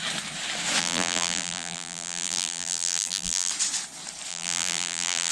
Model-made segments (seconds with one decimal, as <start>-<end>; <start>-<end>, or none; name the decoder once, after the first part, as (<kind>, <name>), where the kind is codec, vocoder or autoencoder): 0.8-3.5 (vocoder, BigVGAN v2); 4.3-5.3